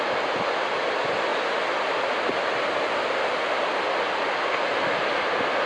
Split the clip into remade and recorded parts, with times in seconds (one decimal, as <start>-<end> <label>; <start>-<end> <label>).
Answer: 0.0-5.7 recorded